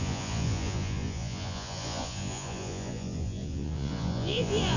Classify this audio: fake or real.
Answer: fake